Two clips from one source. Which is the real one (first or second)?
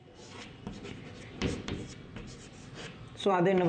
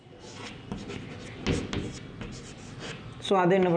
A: second